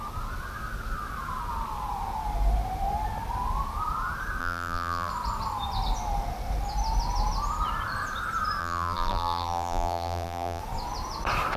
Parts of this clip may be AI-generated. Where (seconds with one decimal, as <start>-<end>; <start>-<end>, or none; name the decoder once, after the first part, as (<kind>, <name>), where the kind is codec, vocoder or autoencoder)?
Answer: 4.4-5.1 (vocoder, BigVGAN v2); 8.6-10.6